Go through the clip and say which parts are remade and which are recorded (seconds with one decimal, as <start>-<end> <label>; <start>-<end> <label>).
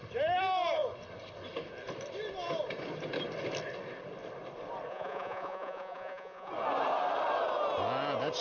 0.0-4.9 recorded; 4.9-6.5 remade; 6.5-8.4 recorded